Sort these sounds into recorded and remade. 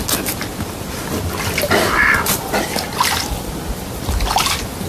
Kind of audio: recorded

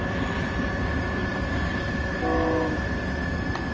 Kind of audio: recorded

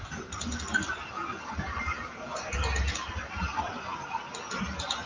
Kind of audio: recorded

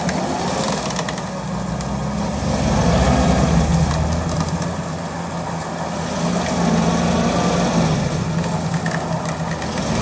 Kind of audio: recorded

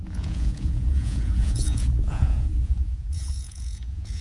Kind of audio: remade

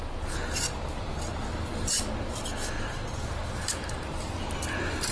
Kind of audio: recorded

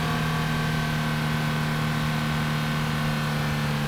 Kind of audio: recorded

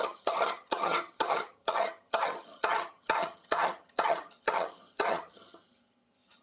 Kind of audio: remade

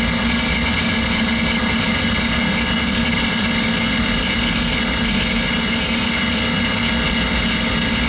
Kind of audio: recorded